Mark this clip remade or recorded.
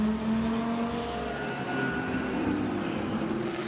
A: recorded